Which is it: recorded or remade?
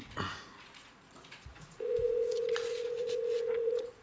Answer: remade